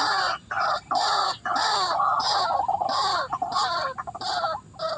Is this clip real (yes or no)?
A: yes